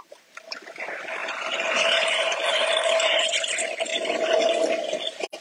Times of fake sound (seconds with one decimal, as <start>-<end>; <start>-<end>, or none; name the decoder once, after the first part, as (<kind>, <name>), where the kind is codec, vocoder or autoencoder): 1.2-3.3 (vocoder, BigVGAN v2); 3.9-4.5